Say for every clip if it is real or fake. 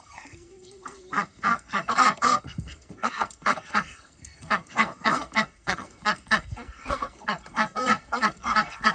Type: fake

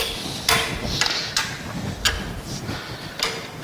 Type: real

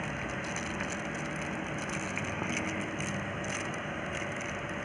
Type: real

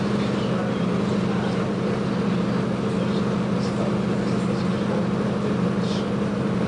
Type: real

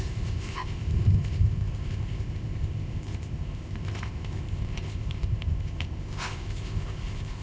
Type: fake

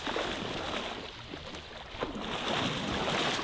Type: real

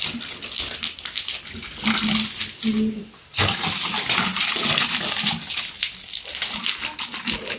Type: real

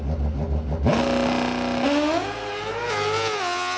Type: real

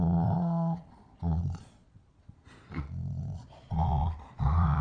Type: fake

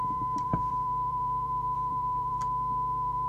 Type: fake